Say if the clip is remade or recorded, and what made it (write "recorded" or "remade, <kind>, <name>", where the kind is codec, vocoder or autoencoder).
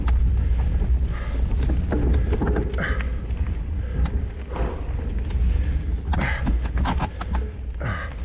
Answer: recorded